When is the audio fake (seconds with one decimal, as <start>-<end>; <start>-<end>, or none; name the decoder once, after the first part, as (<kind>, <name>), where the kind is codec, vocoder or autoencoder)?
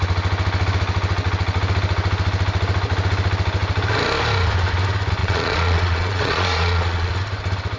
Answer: 5.2-7.1 (vocoder, Vocos)